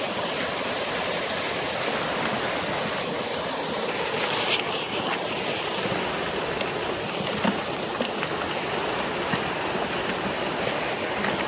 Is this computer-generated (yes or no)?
no